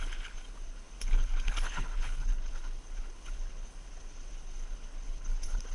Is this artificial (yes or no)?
yes